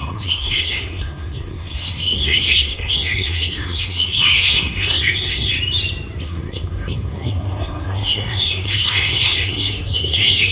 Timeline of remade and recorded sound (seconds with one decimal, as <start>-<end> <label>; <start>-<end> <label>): 0.0-5.5 remade; 5.5-6.2 recorded; 6.2-10.5 remade